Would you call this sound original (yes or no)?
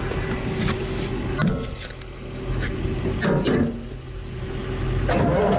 yes